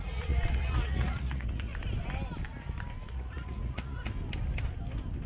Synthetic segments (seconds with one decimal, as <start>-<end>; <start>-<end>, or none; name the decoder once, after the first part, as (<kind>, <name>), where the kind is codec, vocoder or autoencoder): 0.0-1.7 (vocoder, Vocos); 3.1-4.1